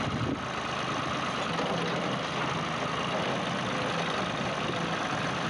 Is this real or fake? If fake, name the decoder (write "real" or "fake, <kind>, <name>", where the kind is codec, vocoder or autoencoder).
real